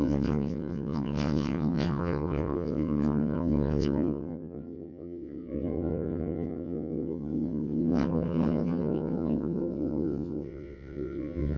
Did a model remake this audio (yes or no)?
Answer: yes